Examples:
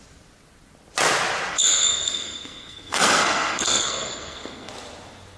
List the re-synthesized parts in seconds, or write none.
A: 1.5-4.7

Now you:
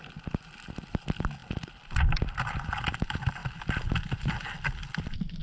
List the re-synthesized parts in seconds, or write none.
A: none